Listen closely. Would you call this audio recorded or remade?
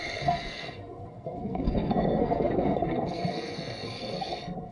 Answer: remade